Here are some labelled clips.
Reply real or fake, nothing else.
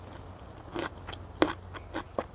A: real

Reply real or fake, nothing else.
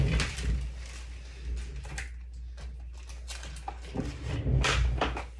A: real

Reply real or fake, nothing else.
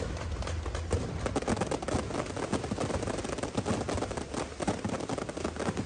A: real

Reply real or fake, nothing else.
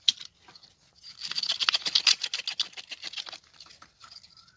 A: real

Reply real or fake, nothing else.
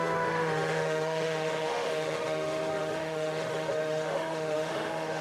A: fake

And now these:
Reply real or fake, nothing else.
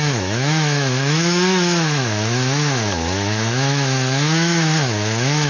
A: fake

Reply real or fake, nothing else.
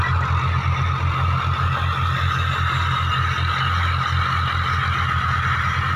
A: real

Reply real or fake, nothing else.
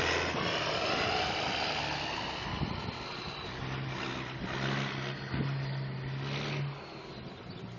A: real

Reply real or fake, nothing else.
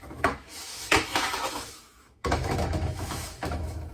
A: fake